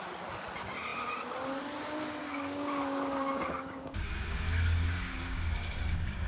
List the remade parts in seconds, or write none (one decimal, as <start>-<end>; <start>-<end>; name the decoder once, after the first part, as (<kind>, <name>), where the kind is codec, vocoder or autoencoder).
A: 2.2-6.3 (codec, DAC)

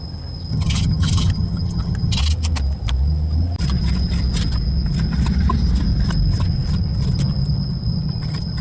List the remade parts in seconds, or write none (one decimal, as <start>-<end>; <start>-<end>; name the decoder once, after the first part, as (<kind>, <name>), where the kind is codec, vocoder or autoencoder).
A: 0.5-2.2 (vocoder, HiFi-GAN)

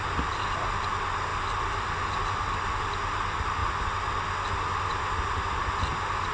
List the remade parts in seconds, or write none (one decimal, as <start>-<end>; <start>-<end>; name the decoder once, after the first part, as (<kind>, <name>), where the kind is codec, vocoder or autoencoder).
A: none

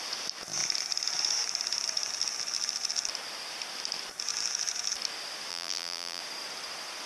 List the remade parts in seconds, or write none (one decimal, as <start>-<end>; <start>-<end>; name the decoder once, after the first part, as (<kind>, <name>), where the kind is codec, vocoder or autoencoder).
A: 5.5-6.2 (vocoder, BigVGAN v2)

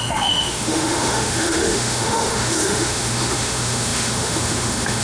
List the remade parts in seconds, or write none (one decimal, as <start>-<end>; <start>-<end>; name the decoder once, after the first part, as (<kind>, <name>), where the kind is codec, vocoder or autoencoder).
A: 0.0-5.0 (autoencoder, DAC-VAE)